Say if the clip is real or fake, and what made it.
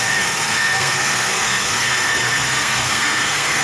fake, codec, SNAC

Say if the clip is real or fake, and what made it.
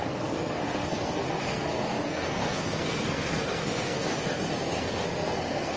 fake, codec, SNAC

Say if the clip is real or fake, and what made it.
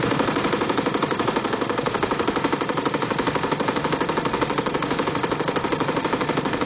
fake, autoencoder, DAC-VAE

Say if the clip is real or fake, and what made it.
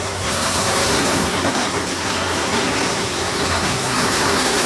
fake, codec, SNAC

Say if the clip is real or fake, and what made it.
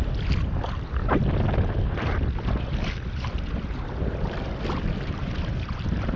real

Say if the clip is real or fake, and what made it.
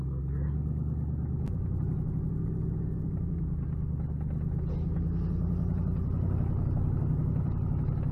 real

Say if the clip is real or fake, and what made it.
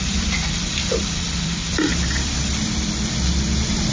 fake, vocoder, BigVGAN v2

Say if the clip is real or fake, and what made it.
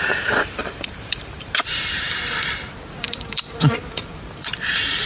fake, vocoder, BigVGAN v2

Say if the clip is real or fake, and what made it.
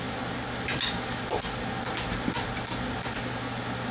real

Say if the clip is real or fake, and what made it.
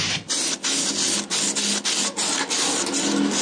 real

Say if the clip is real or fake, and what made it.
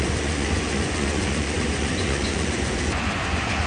fake, vocoder, Vocos